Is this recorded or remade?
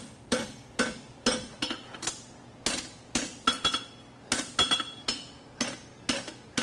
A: recorded